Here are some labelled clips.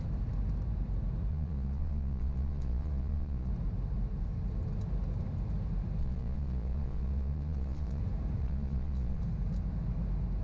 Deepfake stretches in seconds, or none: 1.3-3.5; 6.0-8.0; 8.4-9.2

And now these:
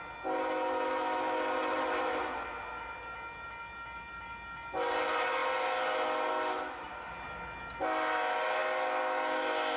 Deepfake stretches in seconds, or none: none

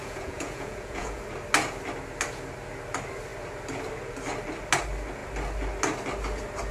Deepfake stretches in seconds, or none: 0.0-1.2

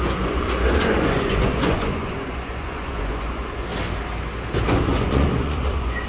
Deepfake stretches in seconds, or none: 0.0-3.7; 4.7-6.1

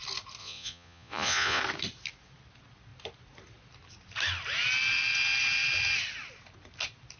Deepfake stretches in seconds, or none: 0.4-1.6

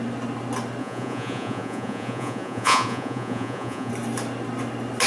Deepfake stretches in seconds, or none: 0.8-3.9

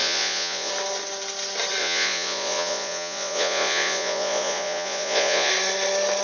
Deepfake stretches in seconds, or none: 0.0-0.7; 1.8-5.5